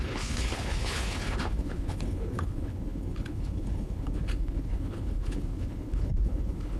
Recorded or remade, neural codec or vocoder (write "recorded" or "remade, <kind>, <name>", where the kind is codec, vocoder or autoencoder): remade, codec, HILCodec